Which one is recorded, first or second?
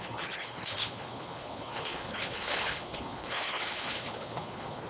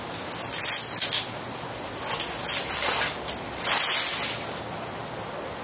second